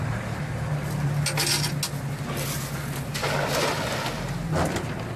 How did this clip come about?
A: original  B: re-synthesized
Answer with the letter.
A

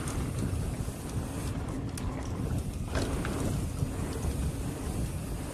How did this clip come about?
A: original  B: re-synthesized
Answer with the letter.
A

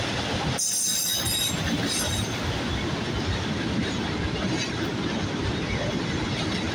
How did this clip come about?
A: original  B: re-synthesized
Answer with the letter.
A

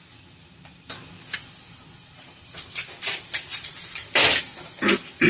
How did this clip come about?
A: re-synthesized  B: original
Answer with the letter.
B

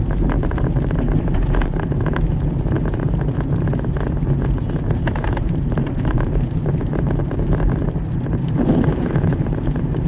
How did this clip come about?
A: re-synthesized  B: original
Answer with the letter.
A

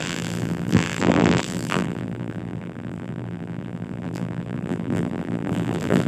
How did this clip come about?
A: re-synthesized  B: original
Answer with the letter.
A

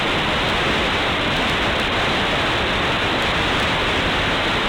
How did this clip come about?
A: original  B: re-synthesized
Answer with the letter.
B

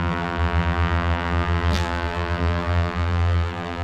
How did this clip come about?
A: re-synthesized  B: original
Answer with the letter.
A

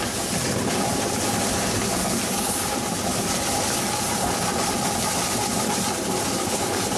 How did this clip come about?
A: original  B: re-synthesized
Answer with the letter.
A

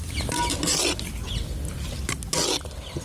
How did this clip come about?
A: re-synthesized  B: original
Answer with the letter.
B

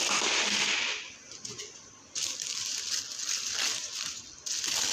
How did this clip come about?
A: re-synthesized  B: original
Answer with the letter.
B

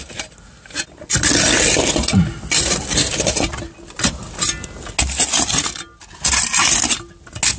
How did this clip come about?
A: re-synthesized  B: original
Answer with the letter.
B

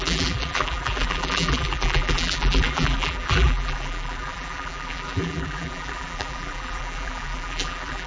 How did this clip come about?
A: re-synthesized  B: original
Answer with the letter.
A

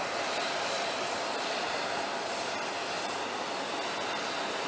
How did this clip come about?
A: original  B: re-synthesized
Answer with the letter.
B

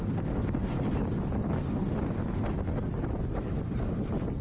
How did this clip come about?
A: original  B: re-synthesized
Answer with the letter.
A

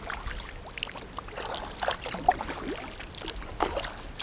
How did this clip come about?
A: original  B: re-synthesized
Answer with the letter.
A